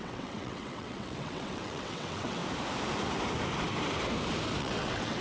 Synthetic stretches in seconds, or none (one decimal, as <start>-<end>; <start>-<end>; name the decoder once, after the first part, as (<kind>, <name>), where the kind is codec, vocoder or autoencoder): 0.0-2.4 (vocoder, WaveNeXt); 4.6-5.2